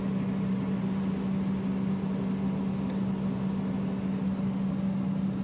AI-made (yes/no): no